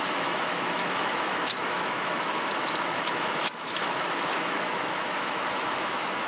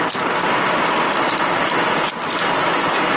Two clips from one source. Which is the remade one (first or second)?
first